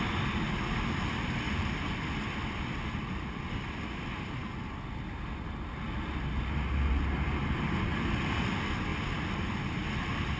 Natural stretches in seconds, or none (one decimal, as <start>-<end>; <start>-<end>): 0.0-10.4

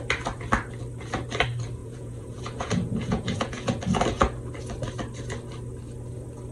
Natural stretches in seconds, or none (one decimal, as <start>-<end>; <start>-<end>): 0.0-1.8; 3.8-6.5

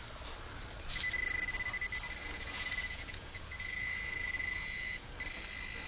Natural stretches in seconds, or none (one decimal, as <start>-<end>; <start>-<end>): 0.0-2.2; 5.1-5.9

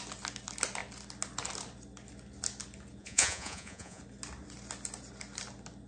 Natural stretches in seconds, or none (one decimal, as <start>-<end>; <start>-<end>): 0.0-3.0; 4.0-5.9